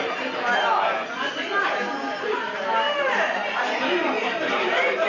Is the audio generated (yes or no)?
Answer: no